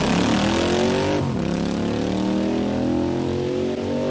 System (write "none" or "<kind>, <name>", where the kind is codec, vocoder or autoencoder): none